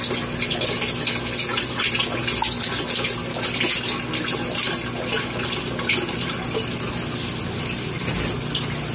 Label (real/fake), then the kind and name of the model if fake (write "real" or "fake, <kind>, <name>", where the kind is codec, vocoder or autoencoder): real